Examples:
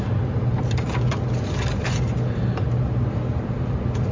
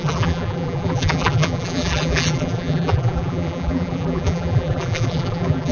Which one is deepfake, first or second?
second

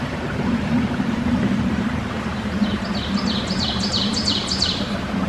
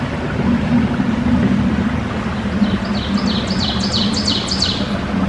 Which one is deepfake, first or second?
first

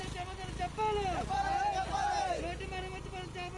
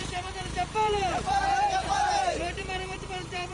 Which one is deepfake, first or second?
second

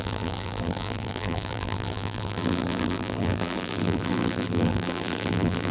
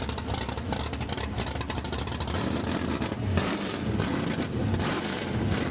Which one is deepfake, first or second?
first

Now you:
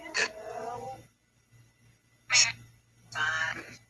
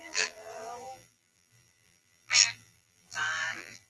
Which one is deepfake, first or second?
second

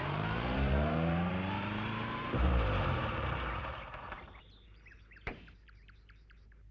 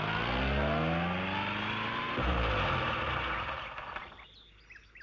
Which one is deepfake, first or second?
first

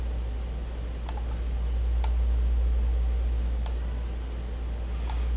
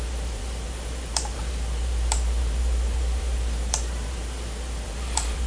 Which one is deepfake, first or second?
second